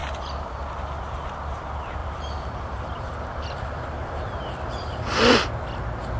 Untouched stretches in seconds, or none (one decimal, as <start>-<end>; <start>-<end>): 0.0-2.0; 5.5-6.2